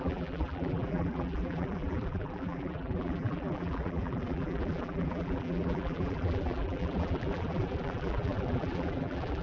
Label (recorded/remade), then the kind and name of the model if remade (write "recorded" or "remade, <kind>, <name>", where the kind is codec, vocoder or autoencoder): remade, vocoder, BigVGAN v2